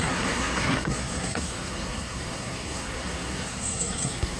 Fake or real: fake